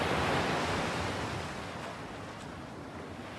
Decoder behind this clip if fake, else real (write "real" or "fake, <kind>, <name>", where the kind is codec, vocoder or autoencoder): real